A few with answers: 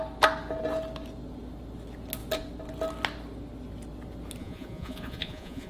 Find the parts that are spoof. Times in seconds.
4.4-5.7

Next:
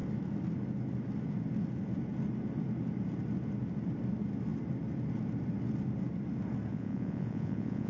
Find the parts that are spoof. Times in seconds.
6.7-7.9

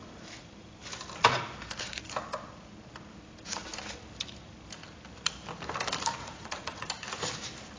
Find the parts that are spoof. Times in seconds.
6.2-6.9